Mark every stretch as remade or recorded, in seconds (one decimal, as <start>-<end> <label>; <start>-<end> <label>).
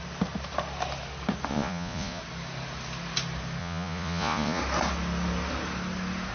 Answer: 0.0-1.5 recorded; 1.5-2.2 remade; 2.2-3.6 recorded; 3.6-4.6 remade; 4.6-6.3 recorded